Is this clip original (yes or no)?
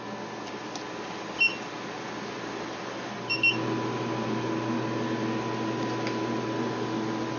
yes